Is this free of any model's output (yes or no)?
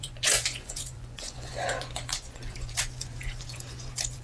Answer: no